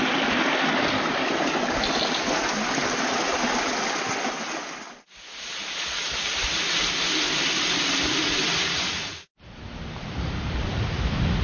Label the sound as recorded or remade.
recorded